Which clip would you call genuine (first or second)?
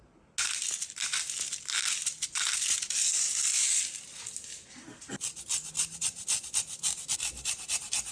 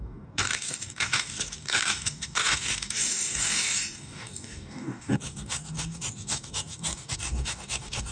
first